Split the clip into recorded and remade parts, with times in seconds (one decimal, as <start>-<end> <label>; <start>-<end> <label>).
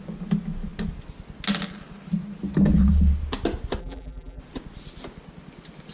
0.0-3.8 recorded; 3.8-4.4 remade; 4.4-5.9 recorded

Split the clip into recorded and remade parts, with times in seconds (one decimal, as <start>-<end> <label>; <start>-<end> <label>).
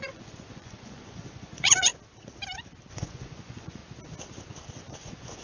0.0-1.9 remade; 1.9-2.9 recorded; 2.9-3.8 remade; 3.8-4.9 recorded; 4.9-5.4 remade